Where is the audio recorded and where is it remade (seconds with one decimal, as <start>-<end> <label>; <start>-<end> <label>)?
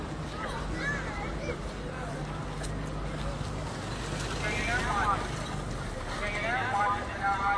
0.0-2.4 remade; 2.4-4.8 recorded; 4.8-6.2 remade; 6.2-6.8 recorded; 6.8-7.6 remade